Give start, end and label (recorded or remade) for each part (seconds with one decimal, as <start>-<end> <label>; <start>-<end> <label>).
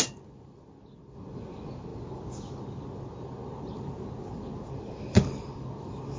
0.0-6.2 recorded